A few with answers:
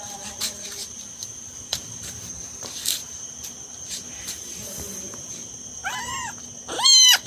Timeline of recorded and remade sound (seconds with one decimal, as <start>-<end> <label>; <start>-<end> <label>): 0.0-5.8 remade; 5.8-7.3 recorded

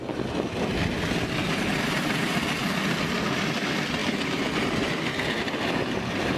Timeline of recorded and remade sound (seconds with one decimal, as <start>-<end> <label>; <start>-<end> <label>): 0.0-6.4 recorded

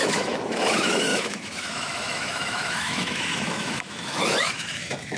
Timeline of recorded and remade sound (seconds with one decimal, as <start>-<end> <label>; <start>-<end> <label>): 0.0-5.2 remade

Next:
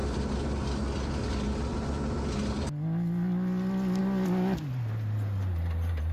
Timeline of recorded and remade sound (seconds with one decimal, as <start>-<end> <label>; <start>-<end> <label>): 0.0-6.1 recorded

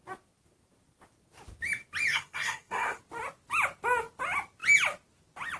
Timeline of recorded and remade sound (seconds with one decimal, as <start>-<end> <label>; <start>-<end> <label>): 0.0-2.1 recorded; 2.1-3.0 remade; 3.0-5.6 recorded

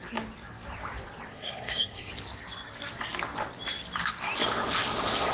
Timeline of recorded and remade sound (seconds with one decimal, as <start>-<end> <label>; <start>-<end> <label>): 0.0-1.3 recorded; 1.3-2.1 remade; 2.1-5.3 recorded